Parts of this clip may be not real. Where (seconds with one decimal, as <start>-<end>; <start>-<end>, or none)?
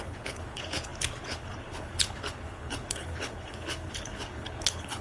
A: 0.0-5.0